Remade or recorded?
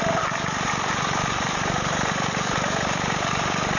recorded